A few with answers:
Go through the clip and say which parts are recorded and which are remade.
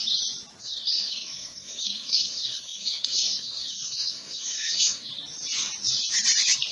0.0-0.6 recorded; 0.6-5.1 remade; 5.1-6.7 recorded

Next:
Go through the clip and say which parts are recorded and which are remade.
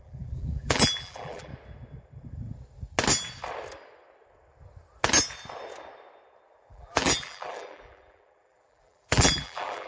0.0-1.5 remade; 1.5-6.7 recorded; 6.7-9.9 remade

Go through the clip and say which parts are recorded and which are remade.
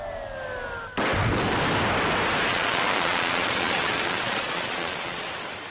0.0-2.5 recorded; 2.5-5.3 remade; 5.3-5.7 recorded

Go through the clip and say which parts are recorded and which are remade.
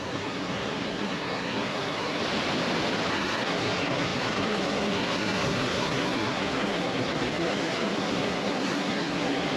0.0-2.2 remade; 2.2-3.1 recorded; 3.1-9.6 remade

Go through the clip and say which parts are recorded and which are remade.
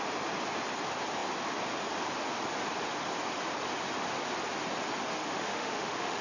0.0-5.2 recorded; 5.2-6.2 remade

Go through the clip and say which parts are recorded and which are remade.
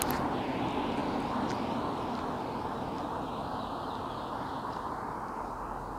0.0-6.0 recorded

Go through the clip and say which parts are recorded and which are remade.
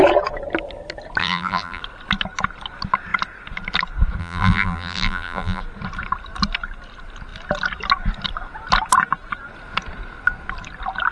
0.0-1.2 recorded; 1.2-1.8 remade; 1.8-4.2 recorded; 4.2-5.6 remade; 5.6-11.1 recorded